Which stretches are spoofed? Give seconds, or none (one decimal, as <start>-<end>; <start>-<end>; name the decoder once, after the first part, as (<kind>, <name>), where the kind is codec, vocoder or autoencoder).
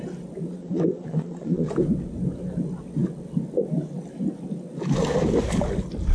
0.6-1.7 (vocoder, Vocos)